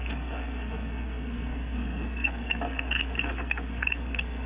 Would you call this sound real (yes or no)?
no